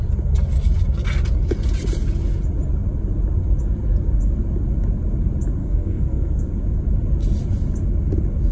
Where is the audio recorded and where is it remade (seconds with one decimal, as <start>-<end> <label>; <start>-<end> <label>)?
0.0-5.6 recorded; 5.6-6.4 remade; 6.4-8.5 recorded